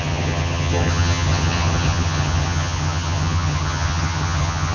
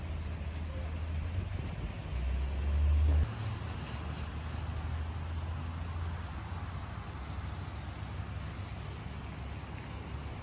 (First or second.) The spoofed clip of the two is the first